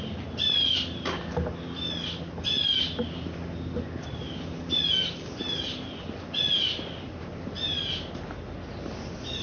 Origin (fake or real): real